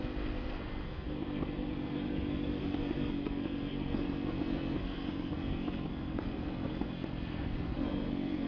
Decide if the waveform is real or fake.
fake